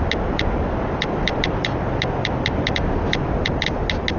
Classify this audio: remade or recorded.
recorded